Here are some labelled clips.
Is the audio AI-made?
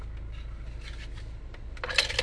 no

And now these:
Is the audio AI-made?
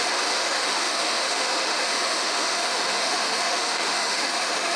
yes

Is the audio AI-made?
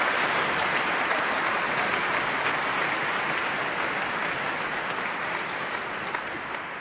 no